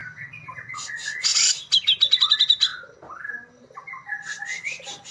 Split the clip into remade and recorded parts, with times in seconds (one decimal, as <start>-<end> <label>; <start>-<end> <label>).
0.0-5.1 recorded